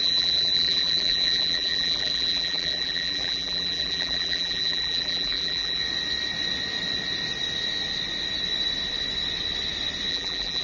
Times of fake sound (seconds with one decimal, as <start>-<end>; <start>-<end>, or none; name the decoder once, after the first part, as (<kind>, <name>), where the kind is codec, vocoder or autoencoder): 0.0-5.8 (vocoder, BigVGAN v2); 10.1-10.6